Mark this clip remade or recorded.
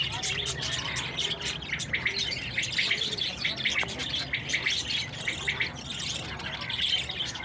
recorded